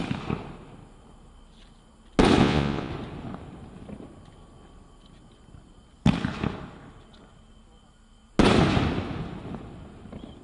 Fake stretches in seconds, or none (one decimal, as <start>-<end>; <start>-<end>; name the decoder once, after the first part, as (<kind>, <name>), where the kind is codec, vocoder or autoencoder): 2.4-2.9 (vocoder, Vocos)